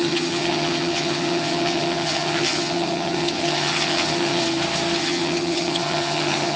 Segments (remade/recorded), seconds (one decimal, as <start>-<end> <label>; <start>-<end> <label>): 0.0-4.4 remade; 4.4-5.0 recorded; 5.0-6.6 remade